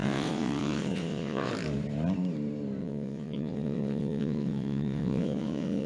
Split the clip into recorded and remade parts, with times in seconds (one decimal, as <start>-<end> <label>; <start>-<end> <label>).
0.0-1.5 remade; 1.5-2.8 recorded; 2.8-5.9 remade